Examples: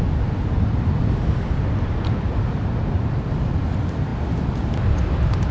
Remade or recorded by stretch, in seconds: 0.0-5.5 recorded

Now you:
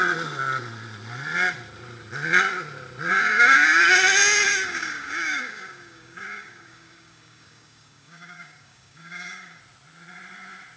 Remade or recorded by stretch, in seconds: 0.0-3.1 recorded; 3.1-3.8 remade; 3.8-4.5 recorded; 4.5-9.6 remade; 9.6-10.8 recorded

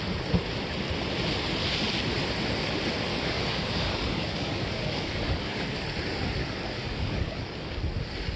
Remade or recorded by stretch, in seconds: 0.0-3.1 recorded; 3.1-5.8 remade; 5.8-6.4 recorded; 6.4-7.7 remade; 7.7-8.4 recorded

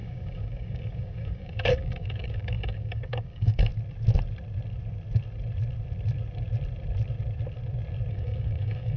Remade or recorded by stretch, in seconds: 0.0-3.7 remade; 3.7-8.1 recorded; 8.1-9.0 remade